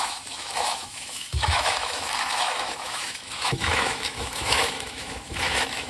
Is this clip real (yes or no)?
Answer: no